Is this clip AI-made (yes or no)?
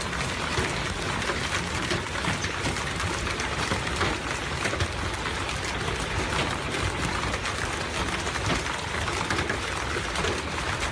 no